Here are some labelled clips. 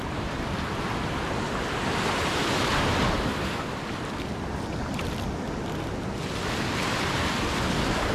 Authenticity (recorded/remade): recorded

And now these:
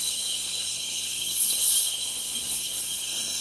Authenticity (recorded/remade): remade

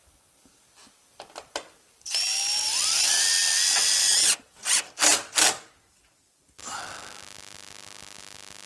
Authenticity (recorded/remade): recorded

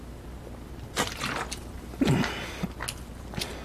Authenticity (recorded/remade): recorded